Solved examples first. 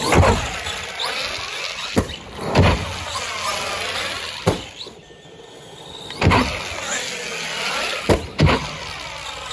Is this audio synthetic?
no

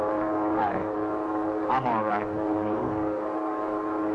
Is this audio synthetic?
yes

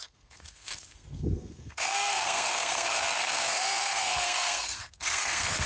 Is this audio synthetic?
yes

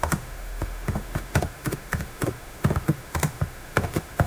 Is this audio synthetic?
yes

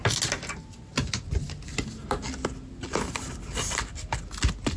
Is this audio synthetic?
no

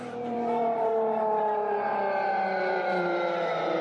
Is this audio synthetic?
yes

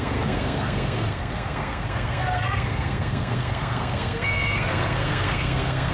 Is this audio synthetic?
yes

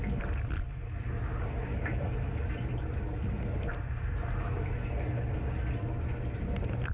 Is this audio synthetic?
no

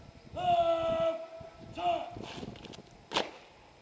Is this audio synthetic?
no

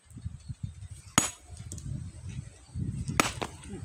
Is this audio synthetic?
no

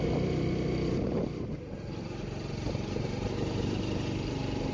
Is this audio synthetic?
no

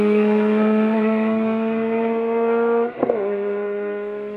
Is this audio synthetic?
yes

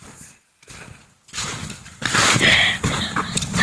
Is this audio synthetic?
no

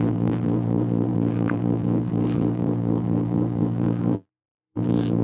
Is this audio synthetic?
yes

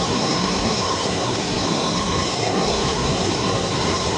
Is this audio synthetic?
yes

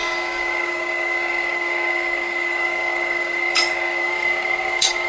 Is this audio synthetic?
yes